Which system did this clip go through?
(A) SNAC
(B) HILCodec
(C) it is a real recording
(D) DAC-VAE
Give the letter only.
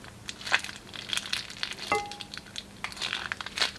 C